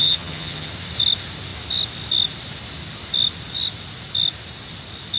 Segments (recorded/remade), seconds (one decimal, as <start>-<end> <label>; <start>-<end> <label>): 0.0-0.7 remade; 0.7-5.2 recorded